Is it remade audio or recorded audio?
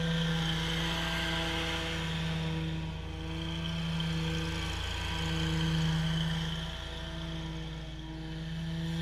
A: recorded